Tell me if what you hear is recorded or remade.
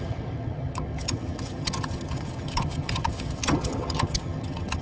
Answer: remade